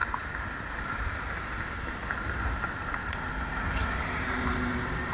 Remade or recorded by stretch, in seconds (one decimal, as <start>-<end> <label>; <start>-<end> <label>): 0.0-5.1 recorded